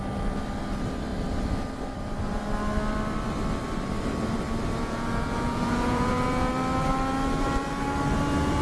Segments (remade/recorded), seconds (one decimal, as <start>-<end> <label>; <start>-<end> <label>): 0.0-4.8 recorded; 4.8-6.5 remade; 6.5-8.6 recorded